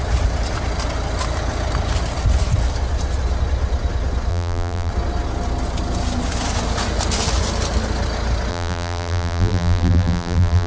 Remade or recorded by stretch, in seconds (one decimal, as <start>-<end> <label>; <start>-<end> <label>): 0.0-4.3 recorded; 4.3-4.9 remade; 4.9-8.5 recorded; 8.5-10.7 remade